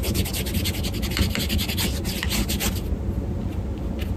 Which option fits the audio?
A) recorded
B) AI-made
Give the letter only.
A